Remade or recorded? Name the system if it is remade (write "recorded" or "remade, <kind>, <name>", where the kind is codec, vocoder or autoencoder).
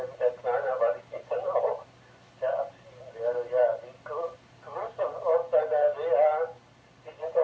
recorded